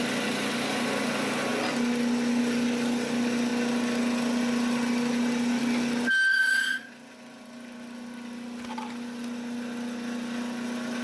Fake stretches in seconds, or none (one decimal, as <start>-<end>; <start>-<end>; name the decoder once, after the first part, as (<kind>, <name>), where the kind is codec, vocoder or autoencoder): 6.3-6.9 (vocoder, Vocos)